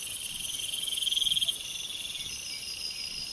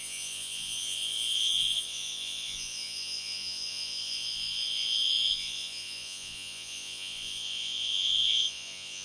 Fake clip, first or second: second